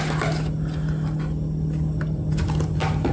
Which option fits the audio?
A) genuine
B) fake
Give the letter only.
A